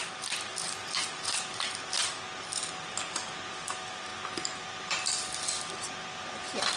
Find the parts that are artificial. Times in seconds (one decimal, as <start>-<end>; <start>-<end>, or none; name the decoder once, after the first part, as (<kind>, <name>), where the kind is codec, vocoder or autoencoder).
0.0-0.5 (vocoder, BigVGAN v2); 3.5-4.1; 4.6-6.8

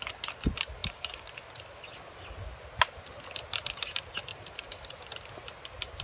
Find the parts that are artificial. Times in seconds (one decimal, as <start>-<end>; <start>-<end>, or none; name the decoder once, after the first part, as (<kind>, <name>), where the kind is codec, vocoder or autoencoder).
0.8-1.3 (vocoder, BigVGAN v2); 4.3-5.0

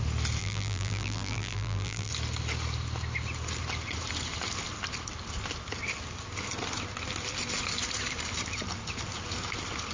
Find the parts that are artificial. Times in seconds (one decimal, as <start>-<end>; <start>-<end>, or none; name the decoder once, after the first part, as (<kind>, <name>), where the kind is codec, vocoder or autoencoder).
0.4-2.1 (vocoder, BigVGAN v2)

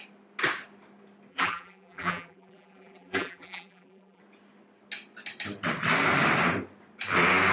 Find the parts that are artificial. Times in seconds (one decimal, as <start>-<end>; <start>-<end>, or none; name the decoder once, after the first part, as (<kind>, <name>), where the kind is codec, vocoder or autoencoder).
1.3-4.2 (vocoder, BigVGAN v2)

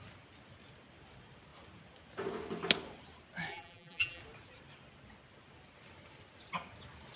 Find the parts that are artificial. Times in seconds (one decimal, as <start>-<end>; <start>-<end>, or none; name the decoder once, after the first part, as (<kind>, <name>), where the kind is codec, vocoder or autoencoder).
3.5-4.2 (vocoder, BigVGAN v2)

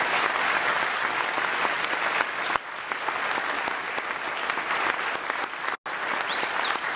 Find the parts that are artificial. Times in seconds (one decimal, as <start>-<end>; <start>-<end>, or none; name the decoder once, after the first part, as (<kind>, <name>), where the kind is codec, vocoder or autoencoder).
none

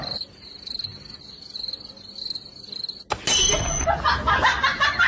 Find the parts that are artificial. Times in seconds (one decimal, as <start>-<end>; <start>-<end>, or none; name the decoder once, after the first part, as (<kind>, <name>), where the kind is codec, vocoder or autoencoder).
none

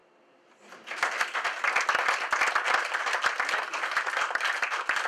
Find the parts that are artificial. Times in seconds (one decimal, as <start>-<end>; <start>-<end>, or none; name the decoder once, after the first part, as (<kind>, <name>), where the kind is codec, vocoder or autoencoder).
none